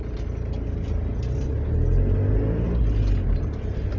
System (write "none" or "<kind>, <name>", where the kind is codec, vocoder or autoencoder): none